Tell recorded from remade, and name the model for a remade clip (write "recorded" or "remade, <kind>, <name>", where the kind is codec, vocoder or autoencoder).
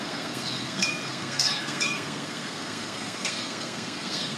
remade, codec, SNAC